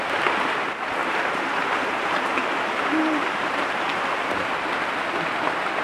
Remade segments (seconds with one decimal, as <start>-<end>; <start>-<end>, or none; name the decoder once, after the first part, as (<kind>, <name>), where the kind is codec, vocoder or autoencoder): 1.0-4.5 (vocoder, BigVGAN v2)